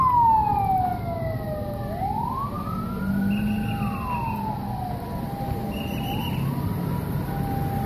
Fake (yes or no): no